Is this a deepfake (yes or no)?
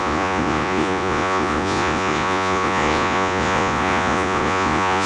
yes